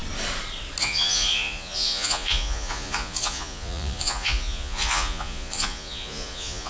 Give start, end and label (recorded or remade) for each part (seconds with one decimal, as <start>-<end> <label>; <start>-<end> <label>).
0.0-0.8 recorded; 0.8-6.7 remade